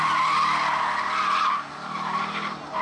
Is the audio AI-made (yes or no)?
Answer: no